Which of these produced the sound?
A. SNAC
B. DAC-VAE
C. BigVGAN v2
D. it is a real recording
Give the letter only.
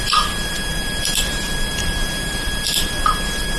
C